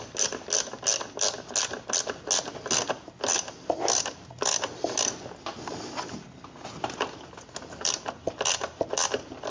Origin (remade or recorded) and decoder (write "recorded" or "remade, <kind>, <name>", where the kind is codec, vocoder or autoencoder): recorded